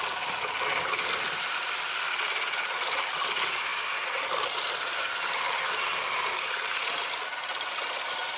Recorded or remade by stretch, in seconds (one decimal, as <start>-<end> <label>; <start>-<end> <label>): 0.0-8.4 recorded